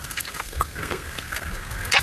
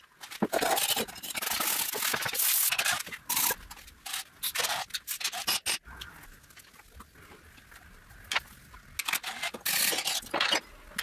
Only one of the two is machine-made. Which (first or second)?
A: first